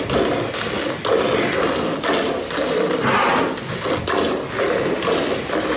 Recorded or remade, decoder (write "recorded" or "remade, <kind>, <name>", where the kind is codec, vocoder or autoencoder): recorded